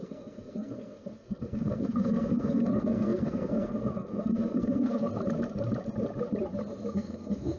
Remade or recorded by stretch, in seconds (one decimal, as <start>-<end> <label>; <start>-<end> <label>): 0.0-5.1 remade; 5.1-6.9 recorded; 6.9-7.6 remade